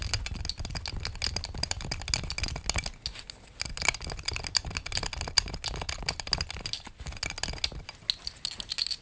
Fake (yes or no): no